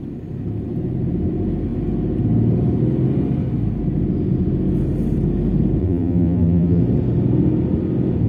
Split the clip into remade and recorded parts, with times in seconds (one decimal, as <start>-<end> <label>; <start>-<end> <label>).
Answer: 0.0-5.8 recorded; 5.8-6.8 remade; 6.8-8.3 recorded